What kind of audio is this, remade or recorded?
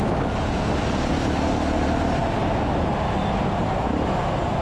recorded